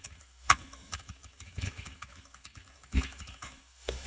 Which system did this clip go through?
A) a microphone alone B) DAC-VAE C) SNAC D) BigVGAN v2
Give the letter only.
B